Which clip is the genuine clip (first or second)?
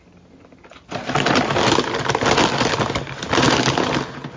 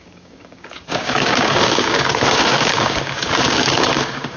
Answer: first